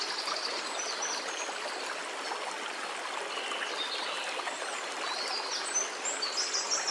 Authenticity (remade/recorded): recorded